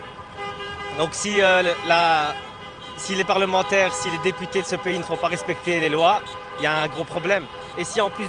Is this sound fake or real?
fake